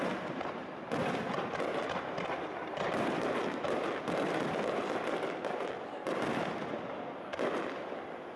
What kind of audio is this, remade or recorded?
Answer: recorded